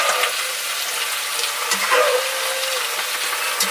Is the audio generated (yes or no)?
no